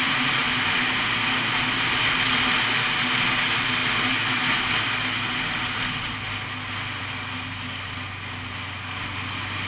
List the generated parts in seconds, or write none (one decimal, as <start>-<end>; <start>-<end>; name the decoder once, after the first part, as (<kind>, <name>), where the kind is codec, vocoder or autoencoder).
none